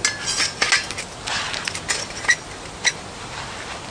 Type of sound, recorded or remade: recorded